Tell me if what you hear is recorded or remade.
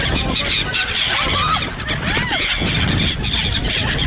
recorded